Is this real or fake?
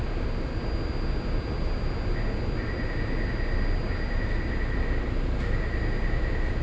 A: real